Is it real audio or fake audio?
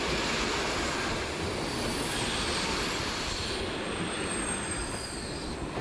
real